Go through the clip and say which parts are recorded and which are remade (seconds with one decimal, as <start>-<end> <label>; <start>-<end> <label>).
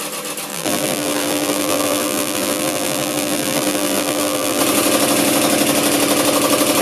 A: 0.0-0.5 recorded; 0.5-4.6 remade; 4.6-6.8 recorded